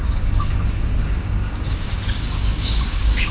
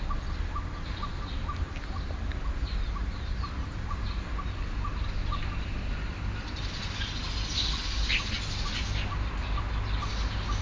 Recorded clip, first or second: second